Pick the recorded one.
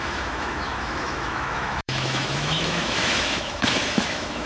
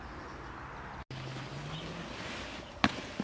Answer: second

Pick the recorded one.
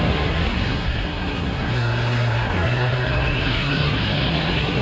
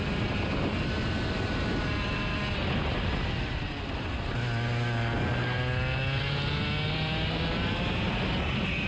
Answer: second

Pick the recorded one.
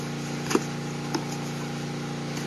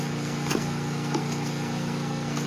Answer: first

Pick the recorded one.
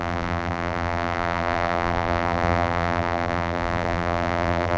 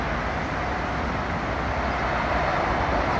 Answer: second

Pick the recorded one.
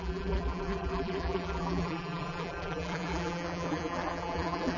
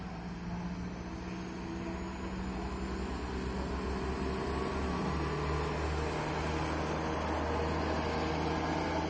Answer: second